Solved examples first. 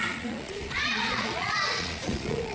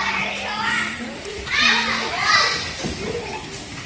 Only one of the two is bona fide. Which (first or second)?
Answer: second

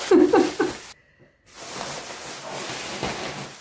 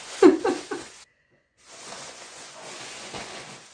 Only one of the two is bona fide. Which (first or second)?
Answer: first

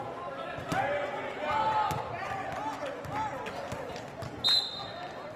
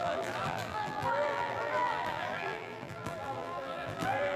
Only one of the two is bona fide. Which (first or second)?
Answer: first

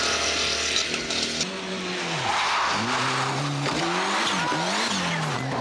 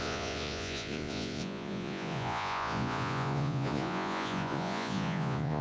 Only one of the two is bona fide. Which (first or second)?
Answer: first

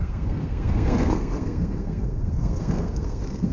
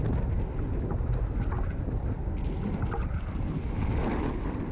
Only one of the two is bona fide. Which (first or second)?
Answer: second